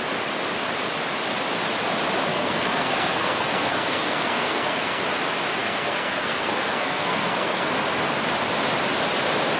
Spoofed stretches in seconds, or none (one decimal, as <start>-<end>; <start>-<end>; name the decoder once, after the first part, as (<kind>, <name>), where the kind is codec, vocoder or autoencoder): 2.3-5.0 (codec, SNAC); 5.6-7.7